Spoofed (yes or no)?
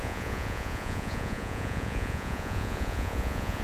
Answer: yes